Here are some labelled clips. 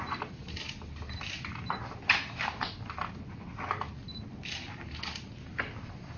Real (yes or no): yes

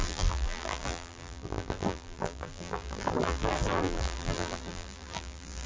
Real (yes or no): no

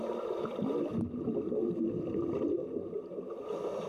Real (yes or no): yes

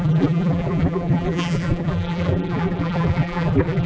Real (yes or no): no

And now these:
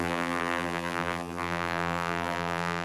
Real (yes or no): no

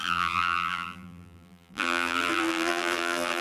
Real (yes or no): no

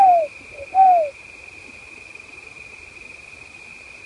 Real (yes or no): yes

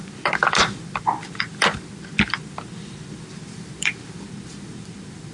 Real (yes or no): no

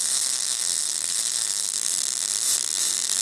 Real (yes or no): no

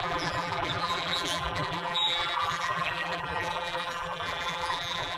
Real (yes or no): no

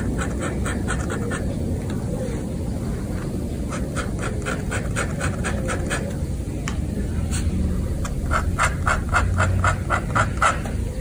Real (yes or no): yes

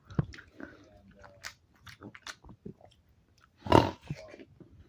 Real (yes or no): yes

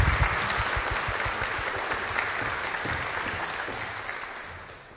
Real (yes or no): yes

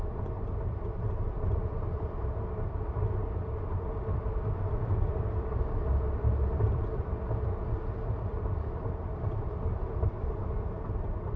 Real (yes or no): no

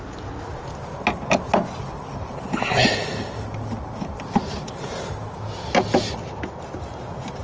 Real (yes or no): yes